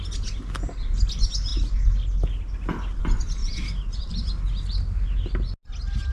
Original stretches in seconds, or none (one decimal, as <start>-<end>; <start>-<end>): 0.0-3.4; 4.4-6.1